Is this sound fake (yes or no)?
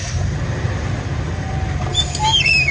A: yes